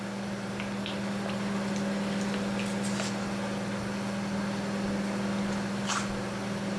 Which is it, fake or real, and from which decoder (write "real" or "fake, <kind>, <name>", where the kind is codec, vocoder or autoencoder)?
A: real